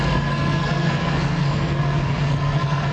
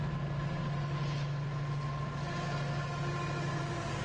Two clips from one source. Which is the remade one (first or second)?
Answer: first